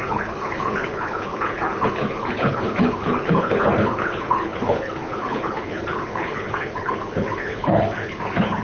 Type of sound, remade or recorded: remade